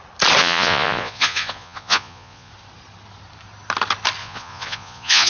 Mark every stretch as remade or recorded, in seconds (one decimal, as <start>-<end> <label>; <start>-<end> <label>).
0.0-0.4 recorded; 0.4-2.5 remade; 2.5-4.2 recorded; 4.2-5.3 remade